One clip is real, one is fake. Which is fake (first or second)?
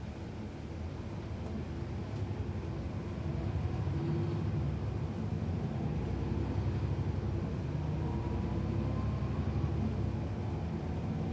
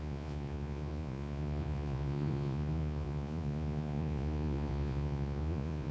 second